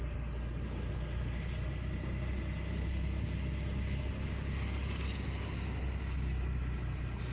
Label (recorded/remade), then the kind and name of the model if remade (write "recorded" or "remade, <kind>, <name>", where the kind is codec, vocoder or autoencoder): recorded